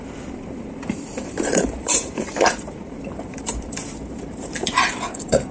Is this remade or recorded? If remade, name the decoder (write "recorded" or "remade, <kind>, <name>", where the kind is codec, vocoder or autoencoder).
remade, vocoder, BigVGAN v2